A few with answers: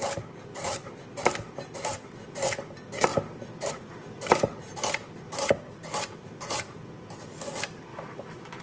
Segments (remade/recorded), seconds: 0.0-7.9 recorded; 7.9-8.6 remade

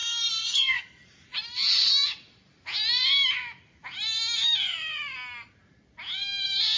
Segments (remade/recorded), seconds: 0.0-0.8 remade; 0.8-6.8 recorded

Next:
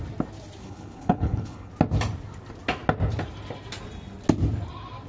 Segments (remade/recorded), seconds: 0.0-0.6 recorded; 0.6-1.7 remade; 1.7-5.1 recorded

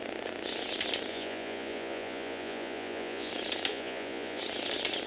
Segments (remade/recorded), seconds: 0.0-1.1 recorded; 1.1-3.3 remade; 3.3-3.7 recorded; 3.7-4.4 remade; 4.4-5.1 recorded

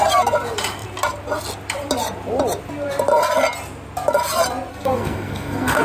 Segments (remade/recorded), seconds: 0.0-4.7 recorded; 4.7-5.8 remade

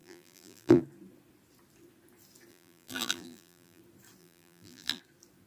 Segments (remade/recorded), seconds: 0.0-0.8 remade; 0.8-2.5 recorded; 2.5-3.8 remade; 3.8-4.2 recorded; 4.2-5.0 remade; 5.0-5.5 recorded